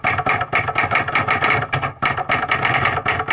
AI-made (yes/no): no